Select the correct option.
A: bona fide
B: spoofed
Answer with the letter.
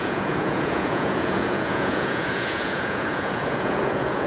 B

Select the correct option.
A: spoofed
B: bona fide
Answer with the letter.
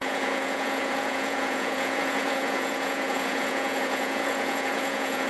A